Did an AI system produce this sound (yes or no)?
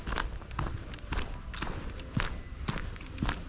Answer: no